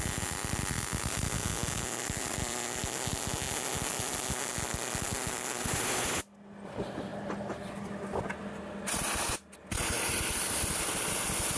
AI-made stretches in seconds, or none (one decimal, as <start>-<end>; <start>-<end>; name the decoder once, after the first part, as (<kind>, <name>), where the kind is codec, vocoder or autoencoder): none